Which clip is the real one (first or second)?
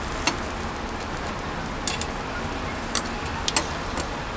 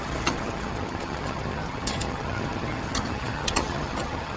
first